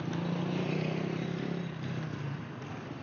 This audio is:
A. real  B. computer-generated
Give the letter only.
A